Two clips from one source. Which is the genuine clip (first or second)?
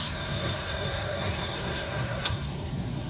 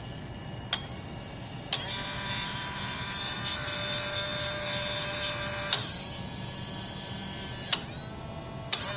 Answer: second